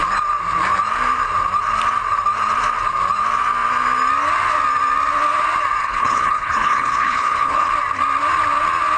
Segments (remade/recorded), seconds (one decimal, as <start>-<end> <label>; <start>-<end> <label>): 0.0-5.8 recorded; 5.8-7.7 remade; 7.7-9.0 recorded